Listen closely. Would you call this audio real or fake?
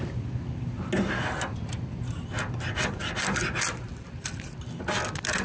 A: real